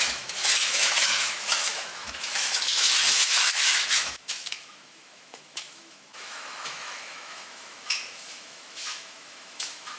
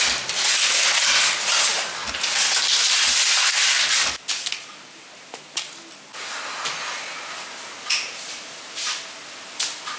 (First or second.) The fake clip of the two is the first